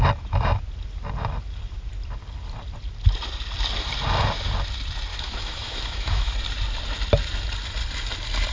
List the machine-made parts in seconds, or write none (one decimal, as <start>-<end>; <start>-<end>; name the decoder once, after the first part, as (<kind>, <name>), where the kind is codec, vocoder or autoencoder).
5.1-6.3 (autoencoder, DAC-VAE)